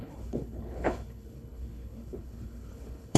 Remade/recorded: remade